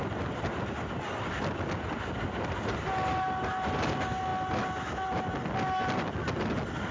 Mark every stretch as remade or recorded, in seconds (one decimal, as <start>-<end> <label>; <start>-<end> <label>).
0.0-6.9 recorded